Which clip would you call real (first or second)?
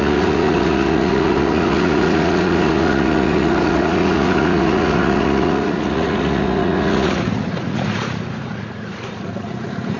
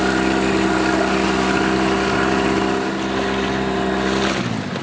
second